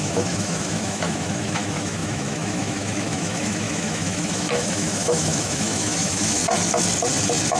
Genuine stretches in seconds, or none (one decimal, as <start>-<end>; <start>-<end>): 6.4-7.6